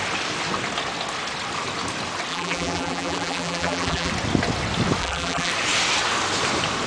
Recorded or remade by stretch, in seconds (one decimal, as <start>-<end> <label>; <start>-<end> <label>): 0.0-2.3 recorded; 2.3-4.1 remade; 4.1-5.0 recorded; 5.0-5.5 remade; 5.5-6.9 recorded

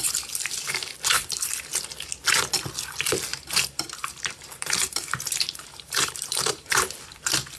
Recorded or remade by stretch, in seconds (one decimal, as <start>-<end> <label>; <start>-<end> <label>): 0.0-3.3 recorded; 3.3-6.9 remade; 6.9-7.6 recorded

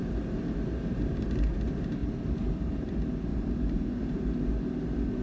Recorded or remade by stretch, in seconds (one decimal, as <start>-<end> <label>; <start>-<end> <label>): 0.0-1.2 remade; 1.2-2.0 recorded; 2.0-2.9 remade; 2.9-3.3 recorded; 3.3-4.5 remade; 4.5-5.2 recorded

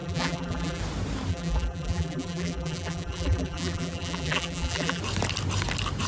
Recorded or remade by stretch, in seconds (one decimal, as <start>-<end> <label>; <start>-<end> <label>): 0.0-0.8 remade; 0.8-1.3 recorded; 1.3-5.0 remade; 5.0-6.1 recorded

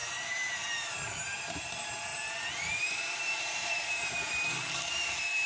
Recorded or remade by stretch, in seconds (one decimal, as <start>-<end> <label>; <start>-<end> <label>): 0.0-2.1 remade; 2.1-2.7 recorded; 2.7-5.5 remade

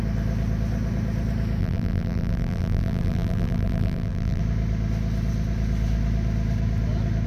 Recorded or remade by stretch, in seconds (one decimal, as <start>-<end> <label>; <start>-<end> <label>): 0.0-1.6 recorded; 1.6-4.4 remade; 4.4-7.3 recorded

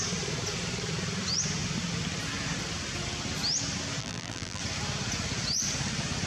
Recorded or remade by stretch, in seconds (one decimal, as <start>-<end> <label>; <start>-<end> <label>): 0.0-4.0 recorded; 4.0-4.6 remade; 4.6-6.3 recorded